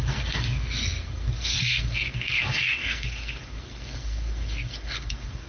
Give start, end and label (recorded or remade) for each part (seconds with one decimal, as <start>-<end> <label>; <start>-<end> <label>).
0.0-5.5 remade